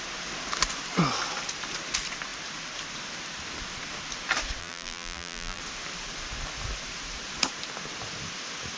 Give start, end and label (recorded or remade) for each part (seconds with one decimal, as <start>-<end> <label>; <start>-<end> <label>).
0.0-4.6 recorded; 4.6-5.6 remade; 5.6-8.8 recorded